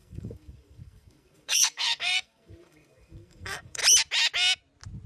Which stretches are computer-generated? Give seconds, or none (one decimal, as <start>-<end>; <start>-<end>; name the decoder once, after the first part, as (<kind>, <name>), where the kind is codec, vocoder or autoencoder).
0.0-3.8 (codec, SNAC)